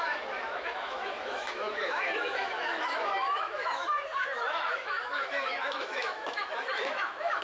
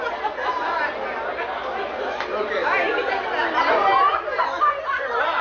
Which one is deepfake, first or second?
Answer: first